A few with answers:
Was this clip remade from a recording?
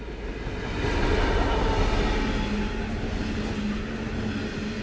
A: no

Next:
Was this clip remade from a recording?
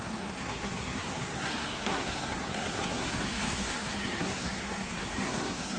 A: yes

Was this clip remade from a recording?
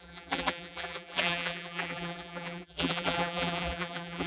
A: yes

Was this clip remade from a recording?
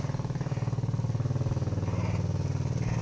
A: no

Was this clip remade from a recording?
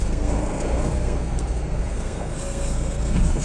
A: yes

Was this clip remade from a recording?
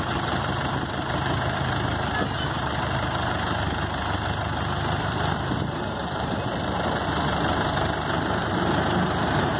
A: yes